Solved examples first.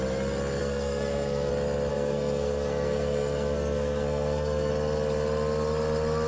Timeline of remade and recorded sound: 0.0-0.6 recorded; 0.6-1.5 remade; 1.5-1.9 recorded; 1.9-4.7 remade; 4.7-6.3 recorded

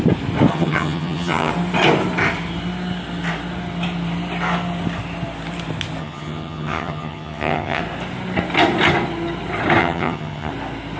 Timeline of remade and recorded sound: 0.0-0.5 recorded; 0.5-1.5 remade; 1.5-6.0 recorded; 6.0-7.8 remade; 7.8-9.8 recorded; 9.8-10.5 remade; 10.5-11.0 recorded